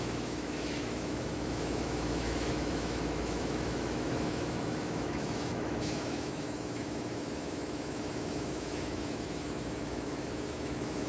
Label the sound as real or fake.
fake